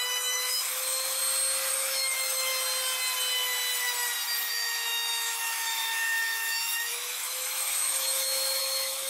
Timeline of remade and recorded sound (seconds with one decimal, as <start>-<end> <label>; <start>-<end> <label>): 0.0-1.2 remade; 1.2-1.7 recorded; 1.7-2.5 remade; 2.5-4.5 recorded; 4.5-9.1 remade